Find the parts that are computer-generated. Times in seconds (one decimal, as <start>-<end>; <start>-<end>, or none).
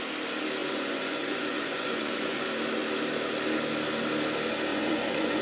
0.6-2.4; 4.7-5.4